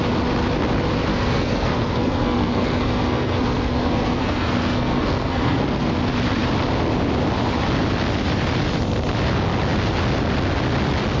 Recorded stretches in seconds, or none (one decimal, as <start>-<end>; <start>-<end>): 0.0-1.1; 5.9-11.2